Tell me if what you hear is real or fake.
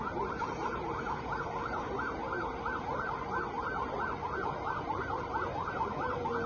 real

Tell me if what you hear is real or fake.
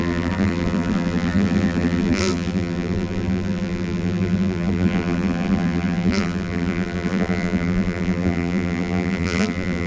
fake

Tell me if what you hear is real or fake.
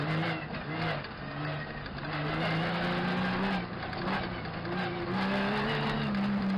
real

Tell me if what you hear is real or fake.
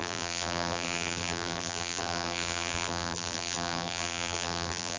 fake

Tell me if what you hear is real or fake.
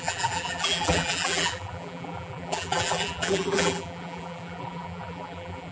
fake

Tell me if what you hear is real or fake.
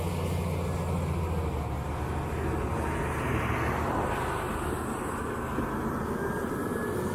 real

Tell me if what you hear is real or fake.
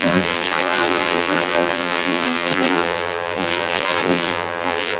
fake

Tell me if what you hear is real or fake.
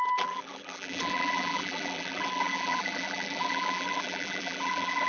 fake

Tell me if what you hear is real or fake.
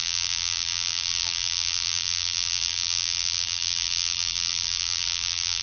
fake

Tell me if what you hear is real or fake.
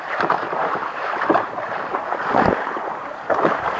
fake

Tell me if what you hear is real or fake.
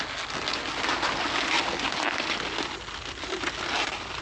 real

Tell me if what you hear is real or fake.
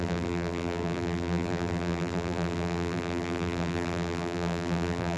fake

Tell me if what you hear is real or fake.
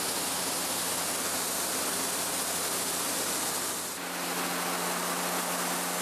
real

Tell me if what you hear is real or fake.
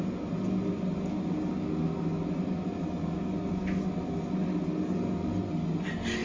real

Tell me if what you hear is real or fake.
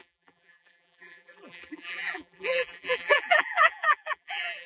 fake